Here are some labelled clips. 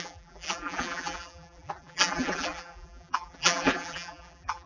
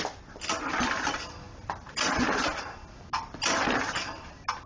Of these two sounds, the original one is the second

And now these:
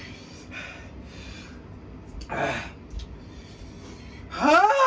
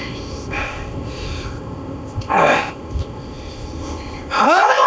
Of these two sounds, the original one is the first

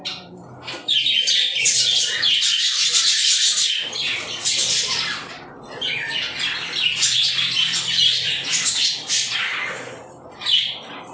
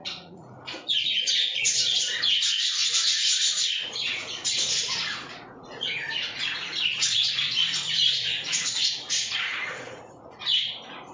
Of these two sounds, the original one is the first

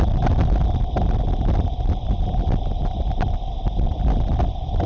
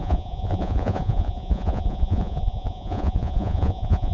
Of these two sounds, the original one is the first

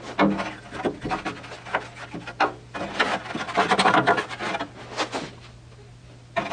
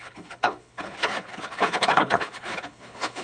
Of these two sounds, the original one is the first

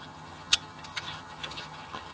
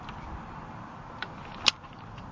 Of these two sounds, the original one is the second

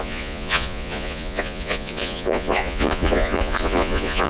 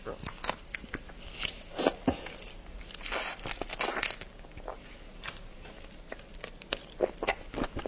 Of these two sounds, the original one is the second